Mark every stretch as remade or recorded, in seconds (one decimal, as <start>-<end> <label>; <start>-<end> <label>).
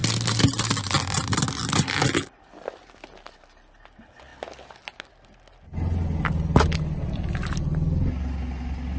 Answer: 0.0-9.0 recorded